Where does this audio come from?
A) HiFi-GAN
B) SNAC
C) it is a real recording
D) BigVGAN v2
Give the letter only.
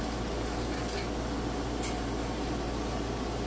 C